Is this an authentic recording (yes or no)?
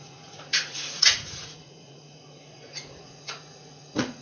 no